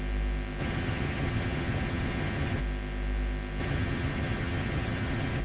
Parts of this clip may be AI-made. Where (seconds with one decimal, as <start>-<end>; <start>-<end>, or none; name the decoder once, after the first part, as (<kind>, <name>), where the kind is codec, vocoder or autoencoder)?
0.6-2.6 (vocoder, HiFi-GAN); 3.6-5.4